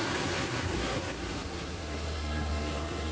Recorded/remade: remade